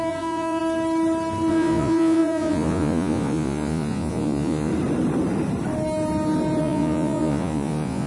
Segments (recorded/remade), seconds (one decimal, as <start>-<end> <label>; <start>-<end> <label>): 0.0-0.6 remade; 0.6-1.5 recorded; 1.5-4.7 remade; 4.7-6.6 recorded; 6.6-8.1 remade